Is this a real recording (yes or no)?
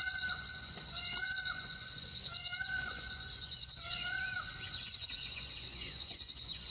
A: no